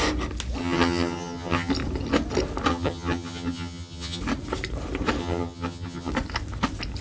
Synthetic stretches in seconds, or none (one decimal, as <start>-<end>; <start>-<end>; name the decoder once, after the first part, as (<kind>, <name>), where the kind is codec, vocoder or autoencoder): 0.6-1.7 (vocoder, HiFi-GAN); 2.7-4.2; 5.2-6.1